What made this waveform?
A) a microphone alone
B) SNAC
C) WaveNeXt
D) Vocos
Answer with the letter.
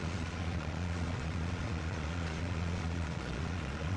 D